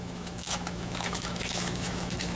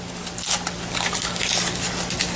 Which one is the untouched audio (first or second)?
second